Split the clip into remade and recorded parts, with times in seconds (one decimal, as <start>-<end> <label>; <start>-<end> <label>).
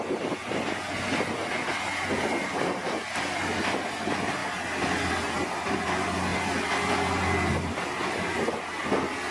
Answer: 0.0-9.3 recorded